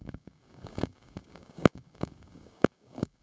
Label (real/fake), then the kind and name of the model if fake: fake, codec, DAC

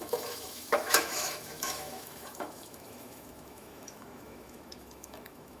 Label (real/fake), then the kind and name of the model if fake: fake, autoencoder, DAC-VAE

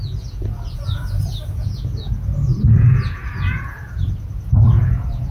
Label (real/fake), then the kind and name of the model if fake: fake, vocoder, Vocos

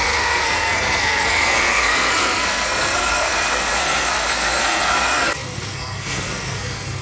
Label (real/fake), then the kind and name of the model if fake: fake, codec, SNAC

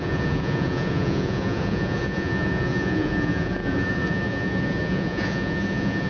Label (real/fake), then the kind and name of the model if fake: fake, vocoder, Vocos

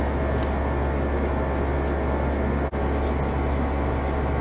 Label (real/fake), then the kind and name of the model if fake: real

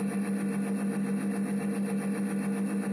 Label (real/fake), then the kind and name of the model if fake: real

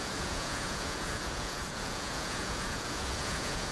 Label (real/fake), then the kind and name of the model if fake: fake, vocoder, Vocos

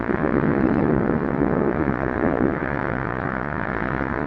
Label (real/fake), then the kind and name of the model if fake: fake, vocoder, Vocos